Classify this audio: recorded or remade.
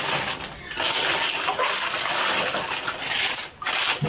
recorded